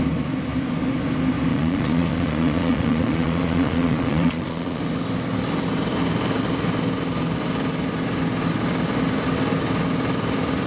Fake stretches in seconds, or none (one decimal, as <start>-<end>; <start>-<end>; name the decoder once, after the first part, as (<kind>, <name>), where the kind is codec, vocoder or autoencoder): 1.5-4.8 (vocoder, Vocos)